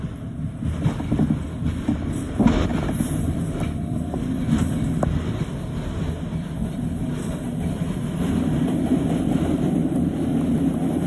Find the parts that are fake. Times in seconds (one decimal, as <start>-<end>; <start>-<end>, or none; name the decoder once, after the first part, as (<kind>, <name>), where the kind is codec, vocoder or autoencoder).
2.7-3.4 (vocoder, BigVGAN v2)